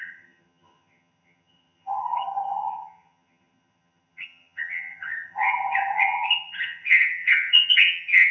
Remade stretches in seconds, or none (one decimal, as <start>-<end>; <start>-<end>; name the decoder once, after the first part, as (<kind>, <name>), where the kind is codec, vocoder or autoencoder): 0.0-8.3 (vocoder, HiFi-GAN)